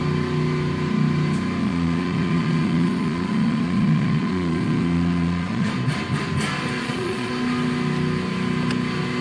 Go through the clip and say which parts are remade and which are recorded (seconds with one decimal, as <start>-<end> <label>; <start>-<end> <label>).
0.0-1.6 recorded; 1.6-5.7 remade; 5.7-6.8 recorded; 6.8-7.3 remade; 7.3-9.2 recorded

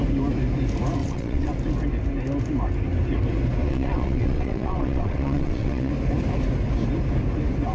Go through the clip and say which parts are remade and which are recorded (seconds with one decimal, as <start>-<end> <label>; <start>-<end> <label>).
0.0-1.0 recorded; 1.0-1.5 remade; 1.5-3.6 recorded; 3.6-5.9 remade; 5.9-7.7 recorded

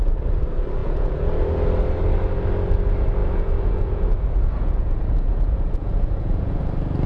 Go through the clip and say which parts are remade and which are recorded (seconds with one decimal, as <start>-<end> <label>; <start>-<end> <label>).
0.0-0.8 recorded; 0.8-1.3 remade; 1.3-3.2 recorded; 3.2-6.6 remade; 6.6-7.1 recorded